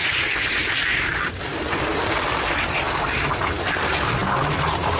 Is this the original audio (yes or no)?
no